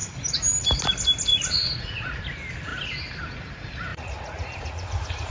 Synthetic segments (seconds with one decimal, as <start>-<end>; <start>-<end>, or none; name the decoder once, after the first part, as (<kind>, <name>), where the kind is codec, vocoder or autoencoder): 1.3-2.2 (vocoder, Vocos); 3.9-5.3